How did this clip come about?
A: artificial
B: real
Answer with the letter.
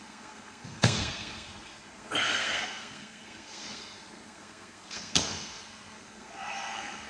A